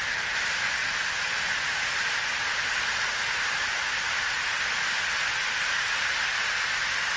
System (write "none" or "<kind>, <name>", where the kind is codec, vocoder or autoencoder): none